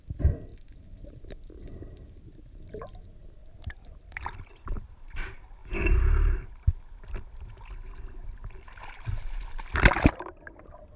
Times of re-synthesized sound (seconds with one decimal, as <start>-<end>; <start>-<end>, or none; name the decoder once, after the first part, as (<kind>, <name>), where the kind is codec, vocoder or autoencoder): 0.0-0.5 (vocoder, BigVGAN v2); 1.1-5.6; 6.6-11.0